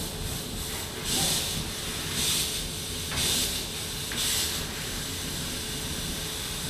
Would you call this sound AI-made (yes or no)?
no